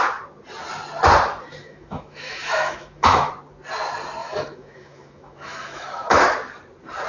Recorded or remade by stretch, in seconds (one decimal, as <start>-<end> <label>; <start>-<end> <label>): 0.0-1.6 recorded; 1.6-3.3 remade; 3.3-4.2 recorded; 4.2-6.2 remade; 6.2-7.1 recorded